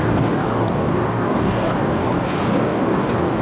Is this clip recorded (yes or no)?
no